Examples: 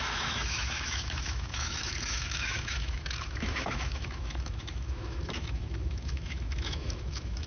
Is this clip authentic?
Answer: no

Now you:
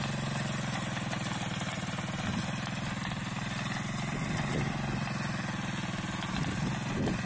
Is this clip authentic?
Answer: yes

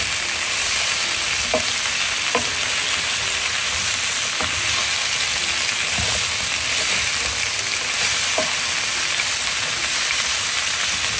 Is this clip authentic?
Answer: yes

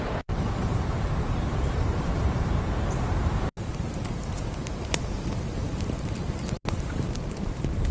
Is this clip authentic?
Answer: no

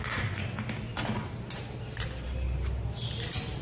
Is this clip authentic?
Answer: yes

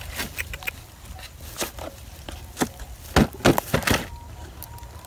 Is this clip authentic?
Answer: yes